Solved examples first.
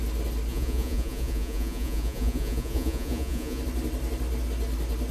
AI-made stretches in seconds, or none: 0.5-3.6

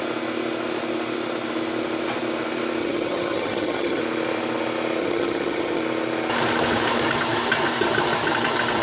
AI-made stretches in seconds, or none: 2.8-4.0; 5.0-5.8

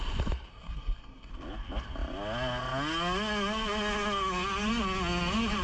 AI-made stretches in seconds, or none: 0.5-1.3

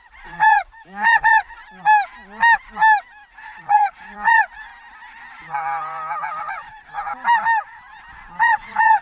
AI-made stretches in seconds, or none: 0.0-1.6; 3.3-4.7; 6.4-7.1; 8.4-9.0

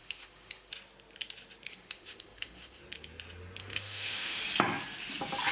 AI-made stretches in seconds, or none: 0.0-0.7; 1.7-2.8; 3.6-4.4

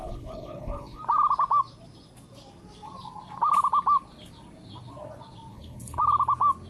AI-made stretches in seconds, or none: 0.0-1.0; 5.5-6.0

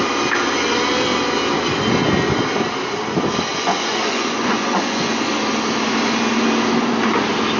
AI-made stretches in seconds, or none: 3.5-5.3

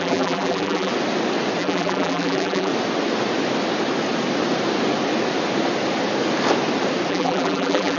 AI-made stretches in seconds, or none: 0.0-0.9; 1.6-2.7; 7.1-8.0